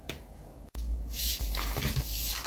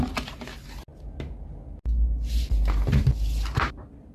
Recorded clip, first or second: second